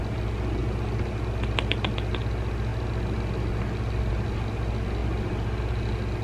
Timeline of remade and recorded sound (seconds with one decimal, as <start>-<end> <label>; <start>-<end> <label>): 0.0-0.6 recorded; 0.6-1.1 remade; 1.1-2.7 recorded; 2.7-4.1 remade; 4.1-5.0 recorded; 5.0-5.6 remade; 5.6-6.2 recorded